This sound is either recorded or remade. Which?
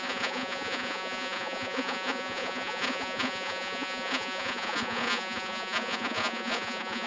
remade